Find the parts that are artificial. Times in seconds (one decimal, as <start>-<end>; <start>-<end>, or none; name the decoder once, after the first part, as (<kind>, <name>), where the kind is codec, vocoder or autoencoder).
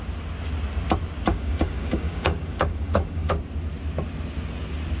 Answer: 1.3-3.3 (codec, DAC)